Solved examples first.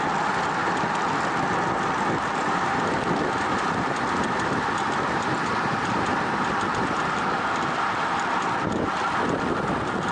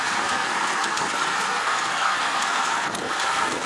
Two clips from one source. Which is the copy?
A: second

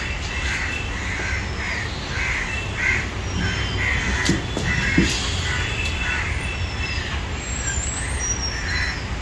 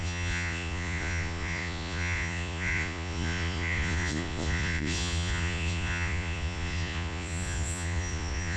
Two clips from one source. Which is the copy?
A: second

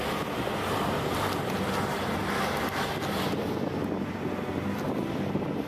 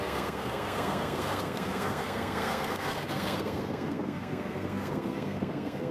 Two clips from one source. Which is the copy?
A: second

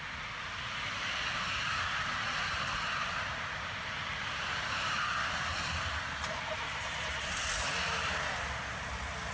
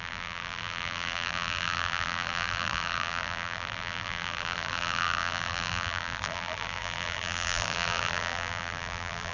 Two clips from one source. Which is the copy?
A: second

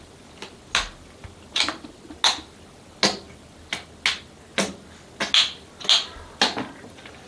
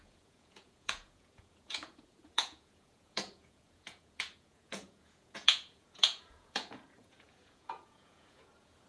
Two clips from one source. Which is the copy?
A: second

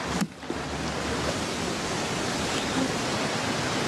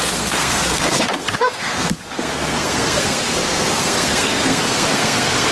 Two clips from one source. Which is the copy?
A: second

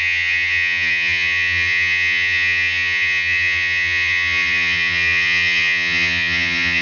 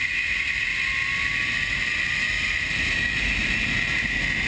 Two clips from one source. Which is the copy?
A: first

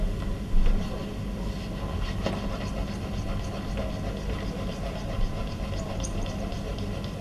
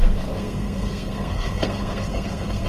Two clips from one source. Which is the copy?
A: second